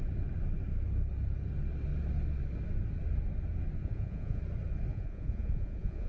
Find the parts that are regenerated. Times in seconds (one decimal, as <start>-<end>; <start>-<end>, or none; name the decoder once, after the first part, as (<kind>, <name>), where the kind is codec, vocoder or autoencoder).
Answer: 3.8-4.4 (vocoder, Vocos); 4.9-6.1